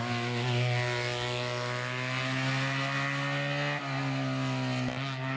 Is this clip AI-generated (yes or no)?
no